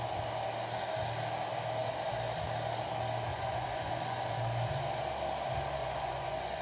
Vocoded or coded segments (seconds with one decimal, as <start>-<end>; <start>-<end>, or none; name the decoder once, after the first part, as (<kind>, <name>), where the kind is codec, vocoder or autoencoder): 3.3-4.2 (vocoder, Vocos); 5.8-6.6